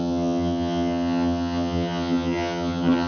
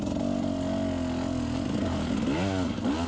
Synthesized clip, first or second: first